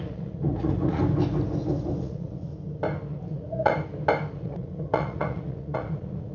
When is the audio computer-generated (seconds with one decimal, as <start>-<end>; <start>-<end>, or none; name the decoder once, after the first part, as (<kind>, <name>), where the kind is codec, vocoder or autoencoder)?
0.0-1.0 (vocoder, Vocos); 2.0-2.5; 3.1-3.7; 4.3-6.3